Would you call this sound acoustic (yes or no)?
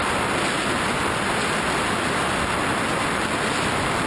yes